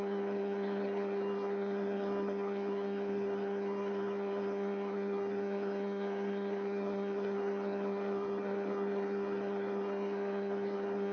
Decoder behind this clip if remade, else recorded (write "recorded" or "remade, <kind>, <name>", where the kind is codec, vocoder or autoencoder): remade, codec, SNAC